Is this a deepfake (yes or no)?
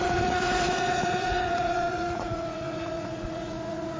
yes